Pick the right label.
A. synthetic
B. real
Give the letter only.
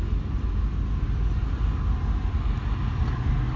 B